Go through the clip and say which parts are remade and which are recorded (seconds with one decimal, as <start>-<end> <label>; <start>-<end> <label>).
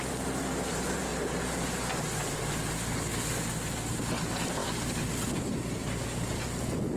0.0-1.1 remade; 1.1-3.9 recorded; 3.9-7.0 remade